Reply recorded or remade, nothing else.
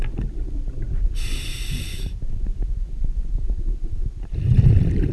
recorded